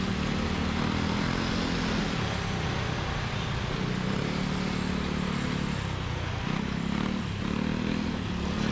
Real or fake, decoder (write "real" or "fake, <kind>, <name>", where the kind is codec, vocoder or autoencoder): real